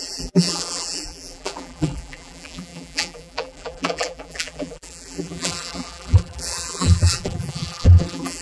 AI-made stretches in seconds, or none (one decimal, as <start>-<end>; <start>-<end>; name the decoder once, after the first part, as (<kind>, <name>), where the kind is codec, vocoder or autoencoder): 0.0-8.4 (vocoder, BigVGAN v2)